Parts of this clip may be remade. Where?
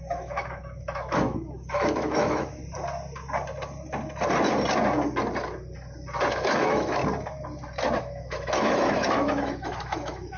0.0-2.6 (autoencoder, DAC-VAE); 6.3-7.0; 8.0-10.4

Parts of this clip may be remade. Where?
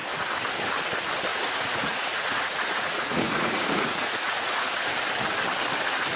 1.3-5.0 (vocoder, Vocos)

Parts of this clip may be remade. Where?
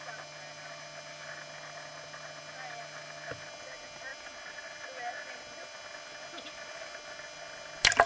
none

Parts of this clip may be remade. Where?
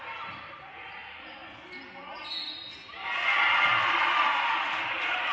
none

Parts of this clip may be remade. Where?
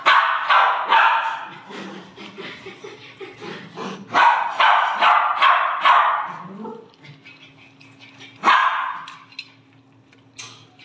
0.9-4.0 (vocoder, BigVGAN v2); 4.7-5.2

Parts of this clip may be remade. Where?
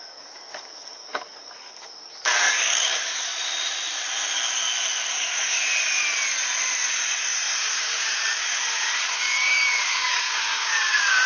0.0-3.3 (codec, DAC); 5.1-5.6; 7.6-11.3